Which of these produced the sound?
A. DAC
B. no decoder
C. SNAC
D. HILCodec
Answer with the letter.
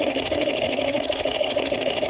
C